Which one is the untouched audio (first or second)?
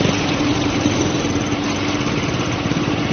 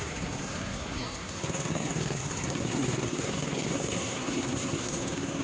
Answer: first